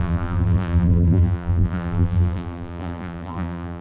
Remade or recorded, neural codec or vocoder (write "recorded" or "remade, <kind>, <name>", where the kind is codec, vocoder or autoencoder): remade, vocoder, BigVGAN v2